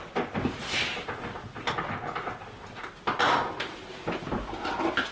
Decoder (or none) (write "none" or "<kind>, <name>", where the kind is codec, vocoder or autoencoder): none